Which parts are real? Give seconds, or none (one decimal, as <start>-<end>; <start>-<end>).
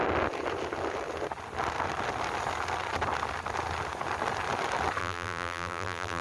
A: 0.0-5.0